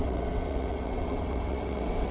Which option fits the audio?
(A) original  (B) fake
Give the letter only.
B